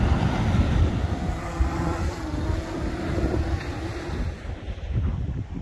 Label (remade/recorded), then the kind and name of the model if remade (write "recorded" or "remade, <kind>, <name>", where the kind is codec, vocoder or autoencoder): recorded